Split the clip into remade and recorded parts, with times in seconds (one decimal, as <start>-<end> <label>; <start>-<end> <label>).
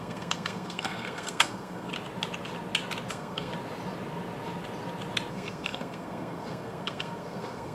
0.0-1.9 remade; 1.9-3.1 recorded; 3.1-3.5 remade; 3.5-5.3 recorded; 5.3-7.7 remade